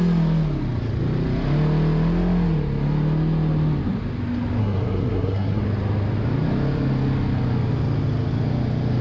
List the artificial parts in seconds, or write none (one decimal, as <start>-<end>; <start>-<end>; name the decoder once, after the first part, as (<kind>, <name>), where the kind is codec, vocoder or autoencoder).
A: 4.6-5.6 (codec, SNAC)